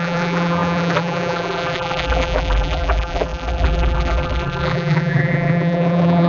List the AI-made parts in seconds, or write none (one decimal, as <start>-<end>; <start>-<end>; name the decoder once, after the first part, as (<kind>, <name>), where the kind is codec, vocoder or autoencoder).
0.0-6.3 (vocoder, BigVGAN v2)

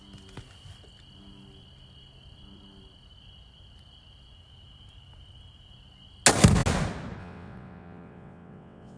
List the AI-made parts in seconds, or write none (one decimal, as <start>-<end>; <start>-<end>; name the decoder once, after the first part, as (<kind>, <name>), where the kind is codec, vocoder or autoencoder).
7.2-9.0 (vocoder, WaveNeXt)

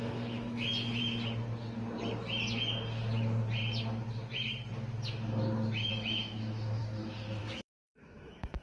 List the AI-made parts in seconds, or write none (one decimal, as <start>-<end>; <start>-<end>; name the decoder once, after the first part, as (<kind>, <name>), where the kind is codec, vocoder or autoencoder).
0.0-1.0 (autoencoder, DAC-VAE); 5.9-6.8; 7.4-8.6

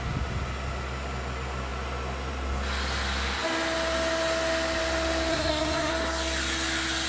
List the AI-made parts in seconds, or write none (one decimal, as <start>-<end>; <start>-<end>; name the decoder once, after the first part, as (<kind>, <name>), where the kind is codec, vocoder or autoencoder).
5.3-5.9 (codec, SNAC)

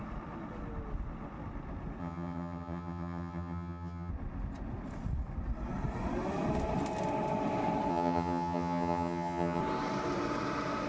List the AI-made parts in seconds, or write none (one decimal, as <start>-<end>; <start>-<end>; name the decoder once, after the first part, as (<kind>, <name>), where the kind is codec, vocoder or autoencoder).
2.0-4.1 (vocoder, HiFi-GAN); 7.9-9.6

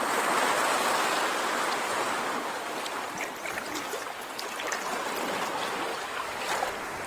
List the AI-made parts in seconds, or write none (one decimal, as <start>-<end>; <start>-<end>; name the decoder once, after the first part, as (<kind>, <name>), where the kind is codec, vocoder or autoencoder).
5.9-6.4 (codec, DAC)

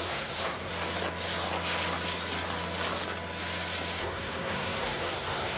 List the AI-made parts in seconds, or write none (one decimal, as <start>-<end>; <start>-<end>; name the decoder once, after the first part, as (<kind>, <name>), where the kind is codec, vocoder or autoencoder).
0.0-0.7 (codec, SNAC); 4.0-5.6